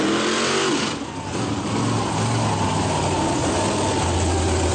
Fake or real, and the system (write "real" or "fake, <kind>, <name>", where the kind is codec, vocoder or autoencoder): real